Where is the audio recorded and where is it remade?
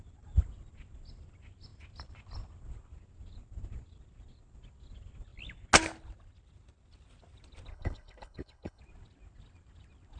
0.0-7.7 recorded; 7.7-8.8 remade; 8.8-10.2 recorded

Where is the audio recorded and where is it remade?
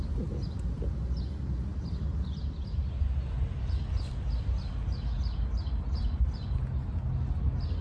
0.0-7.8 recorded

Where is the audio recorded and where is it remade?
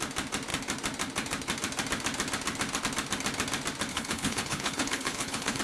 0.0-3.9 recorded; 3.9-5.6 remade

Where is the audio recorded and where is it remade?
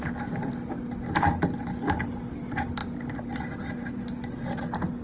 0.0-5.0 recorded